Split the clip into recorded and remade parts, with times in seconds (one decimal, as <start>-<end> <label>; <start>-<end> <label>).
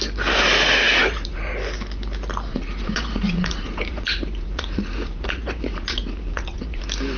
0.0-0.9 recorded; 0.9-1.5 remade; 1.5-2.5 recorded; 2.5-6.8 remade; 6.8-7.2 recorded